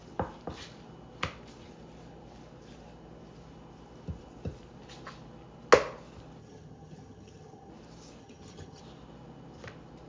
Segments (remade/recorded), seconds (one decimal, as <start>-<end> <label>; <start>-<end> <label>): 0.0-6.4 recorded; 6.4-7.7 remade; 7.7-8.2 recorded; 8.2-8.8 remade; 8.8-10.1 recorded